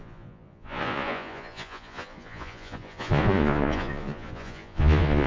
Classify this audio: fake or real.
fake